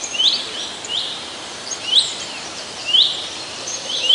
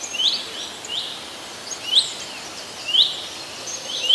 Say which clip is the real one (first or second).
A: second